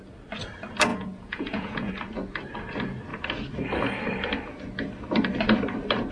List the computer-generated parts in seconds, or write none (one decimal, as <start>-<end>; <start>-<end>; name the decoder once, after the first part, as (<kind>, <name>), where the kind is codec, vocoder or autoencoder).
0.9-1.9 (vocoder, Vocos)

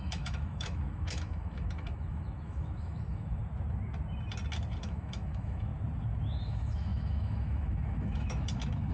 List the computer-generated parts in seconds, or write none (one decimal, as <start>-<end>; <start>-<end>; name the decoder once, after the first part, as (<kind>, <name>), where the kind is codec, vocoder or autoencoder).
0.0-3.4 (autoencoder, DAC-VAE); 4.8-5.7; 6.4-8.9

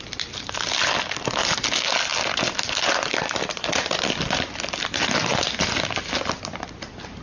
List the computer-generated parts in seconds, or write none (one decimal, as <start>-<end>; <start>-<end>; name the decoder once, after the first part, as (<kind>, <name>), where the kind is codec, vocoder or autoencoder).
none